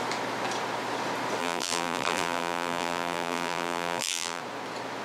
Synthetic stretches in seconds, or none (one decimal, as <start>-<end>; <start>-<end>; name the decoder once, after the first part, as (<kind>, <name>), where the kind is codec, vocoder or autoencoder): 1.4-4.4 (vocoder, BigVGAN v2)